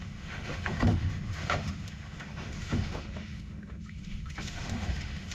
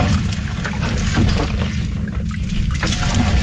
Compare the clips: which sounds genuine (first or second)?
second